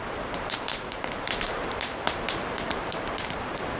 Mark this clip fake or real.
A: fake